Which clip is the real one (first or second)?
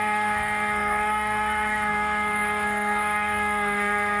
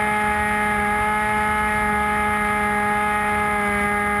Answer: second